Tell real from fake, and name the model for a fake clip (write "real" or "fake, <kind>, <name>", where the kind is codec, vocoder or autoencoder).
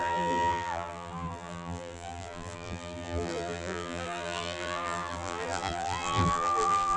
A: fake, vocoder, BigVGAN v2